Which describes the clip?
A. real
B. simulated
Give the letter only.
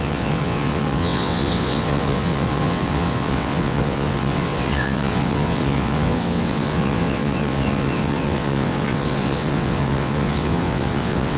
B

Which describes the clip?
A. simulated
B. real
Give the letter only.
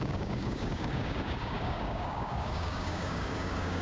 A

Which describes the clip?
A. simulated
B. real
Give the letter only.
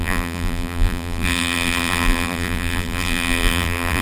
A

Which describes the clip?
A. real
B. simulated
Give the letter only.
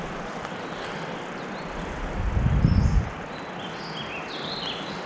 A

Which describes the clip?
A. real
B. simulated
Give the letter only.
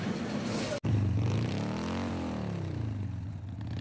A